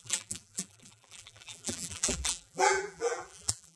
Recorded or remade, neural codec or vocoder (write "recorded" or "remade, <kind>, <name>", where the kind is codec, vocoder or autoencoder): remade, vocoder, BigVGAN v2